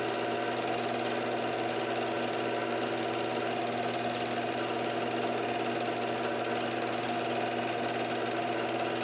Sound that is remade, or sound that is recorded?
recorded